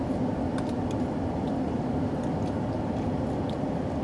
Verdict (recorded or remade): recorded